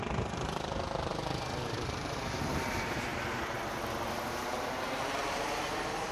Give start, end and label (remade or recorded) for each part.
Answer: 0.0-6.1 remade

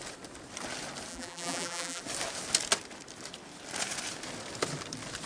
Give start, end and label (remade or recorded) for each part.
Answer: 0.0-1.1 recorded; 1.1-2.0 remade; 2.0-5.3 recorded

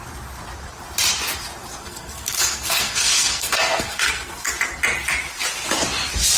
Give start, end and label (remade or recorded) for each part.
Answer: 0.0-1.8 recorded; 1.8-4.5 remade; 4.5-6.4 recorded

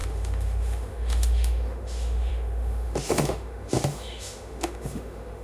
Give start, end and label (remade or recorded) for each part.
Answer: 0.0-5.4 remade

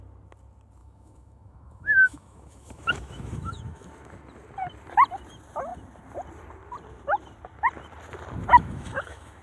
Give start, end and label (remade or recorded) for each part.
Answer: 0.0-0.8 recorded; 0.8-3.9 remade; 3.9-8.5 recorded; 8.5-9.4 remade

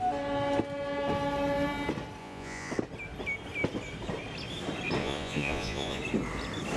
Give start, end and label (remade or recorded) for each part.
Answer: 0.0-2.2 recorded; 2.2-2.7 remade; 2.7-5.0 recorded; 5.0-6.0 remade; 6.0-6.8 recorded

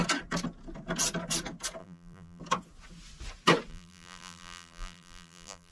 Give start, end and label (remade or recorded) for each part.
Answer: 0.0-1.8 recorded; 1.8-2.4 remade; 2.4-3.7 recorded; 3.7-5.7 remade